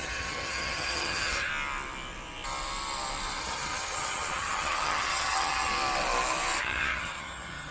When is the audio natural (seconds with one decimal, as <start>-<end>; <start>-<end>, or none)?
1.5-3.4; 5.7-6.6